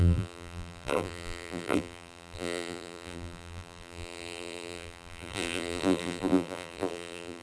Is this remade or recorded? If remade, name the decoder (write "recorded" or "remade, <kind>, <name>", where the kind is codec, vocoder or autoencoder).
remade, vocoder, BigVGAN v2